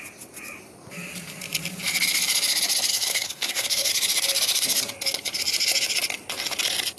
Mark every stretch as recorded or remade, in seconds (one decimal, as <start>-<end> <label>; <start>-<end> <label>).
0.0-2.9 recorded; 2.9-3.9 remade; 3.9-7.0 recorded